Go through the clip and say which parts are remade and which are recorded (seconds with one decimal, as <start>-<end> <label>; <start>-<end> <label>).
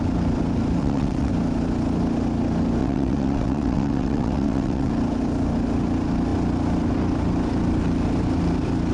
0.0-0.8 recorded; 0.8-1.3 remade; 1.3-2.8 recorded; 2.8-4.9 remade; 4.9-8.9 recorded